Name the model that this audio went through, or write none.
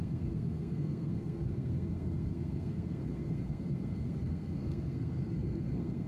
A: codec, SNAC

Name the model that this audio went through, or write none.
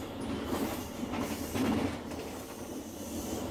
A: none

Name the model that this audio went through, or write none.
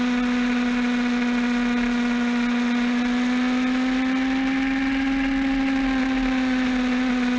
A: none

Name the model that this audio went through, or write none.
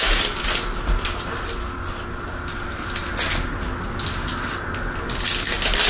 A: none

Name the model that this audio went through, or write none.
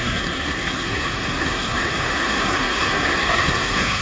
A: codec, SNAC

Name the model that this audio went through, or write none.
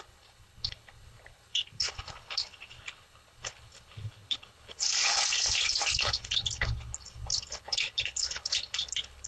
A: codec, HILCodec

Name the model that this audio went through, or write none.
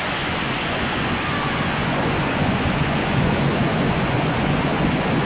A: vocoder, Vocos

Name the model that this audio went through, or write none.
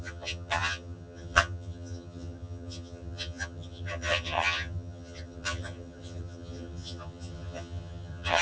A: vocoder, HiFi-GAN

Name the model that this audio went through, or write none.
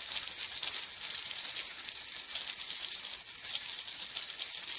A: none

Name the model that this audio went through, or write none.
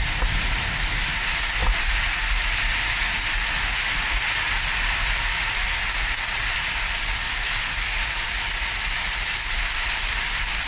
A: none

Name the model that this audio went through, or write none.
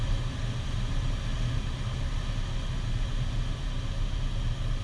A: none